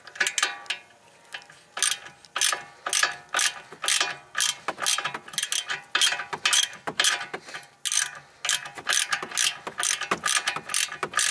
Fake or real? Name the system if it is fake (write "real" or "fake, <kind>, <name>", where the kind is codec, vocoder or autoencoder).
real